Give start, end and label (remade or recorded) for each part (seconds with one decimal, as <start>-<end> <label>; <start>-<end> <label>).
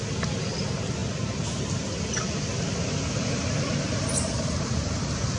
0.0-1.0 remade; 1.0-4.0 recorded; 4.0-5.4 remade